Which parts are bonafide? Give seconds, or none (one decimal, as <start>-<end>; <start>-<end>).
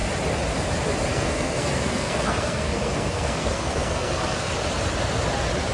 0.0-1.1; 4.5-5.7